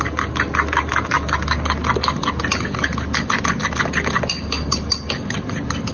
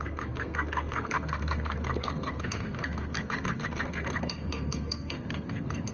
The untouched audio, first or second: first